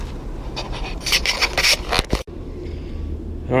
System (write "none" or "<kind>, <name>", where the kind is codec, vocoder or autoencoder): none